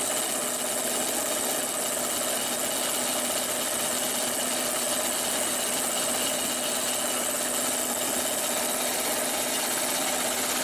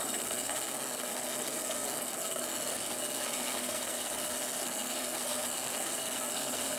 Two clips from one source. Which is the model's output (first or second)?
second